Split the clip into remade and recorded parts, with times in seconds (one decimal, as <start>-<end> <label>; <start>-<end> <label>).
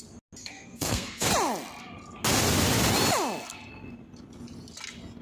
0.0-0.4 recorded; 0.4-1.3 remade; 1.3-5.2 recorded